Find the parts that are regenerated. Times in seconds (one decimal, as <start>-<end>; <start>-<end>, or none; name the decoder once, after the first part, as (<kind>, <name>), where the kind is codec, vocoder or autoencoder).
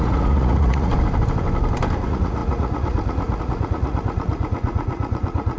0.0-0.9 (vocoder, Vocos); 2.0-5.6